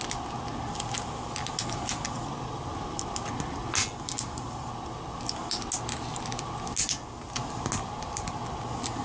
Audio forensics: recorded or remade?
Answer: recorded